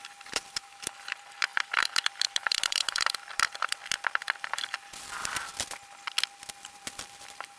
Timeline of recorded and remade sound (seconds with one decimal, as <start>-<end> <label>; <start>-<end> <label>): 0.0-3.8 remade; 3.8-4.5 recorded; 4.5-5.5 remade; 5.5-6.5 recorded; 6.5-7.6 remade